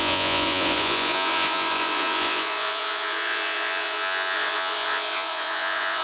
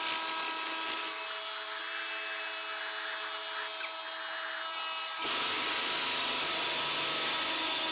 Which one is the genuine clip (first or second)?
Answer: second